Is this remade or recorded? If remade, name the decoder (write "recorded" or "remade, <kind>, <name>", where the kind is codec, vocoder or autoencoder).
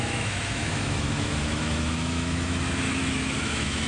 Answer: remade, autoencoder, DAC-VAE